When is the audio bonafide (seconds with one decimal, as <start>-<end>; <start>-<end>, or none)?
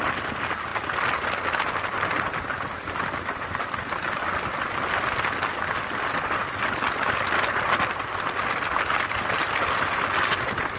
0.0-10.8